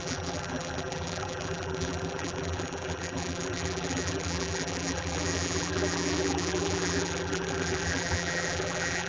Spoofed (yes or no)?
yes